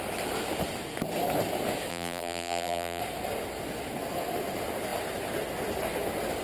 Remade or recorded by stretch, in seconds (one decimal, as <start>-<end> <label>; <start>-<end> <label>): 0.0-1.9 recorded; 1.9-3.0 remade; 3.0-6.4 recorded